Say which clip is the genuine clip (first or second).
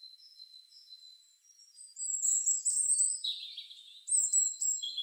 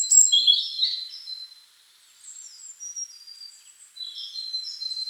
second